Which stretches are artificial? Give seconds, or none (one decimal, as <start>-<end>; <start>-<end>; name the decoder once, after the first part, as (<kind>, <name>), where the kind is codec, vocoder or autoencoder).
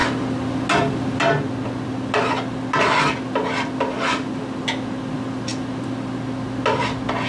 none